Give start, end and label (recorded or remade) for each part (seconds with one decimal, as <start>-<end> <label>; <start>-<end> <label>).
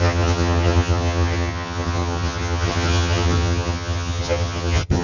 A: 0.0-5.0 remade